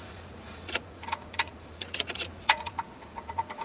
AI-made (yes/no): yes